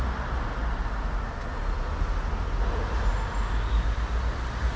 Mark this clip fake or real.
real